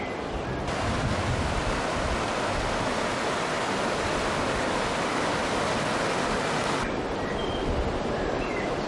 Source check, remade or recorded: recorded